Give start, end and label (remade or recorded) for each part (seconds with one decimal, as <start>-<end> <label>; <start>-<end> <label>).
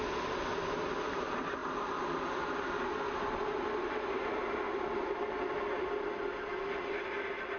0.0-7.6 recorded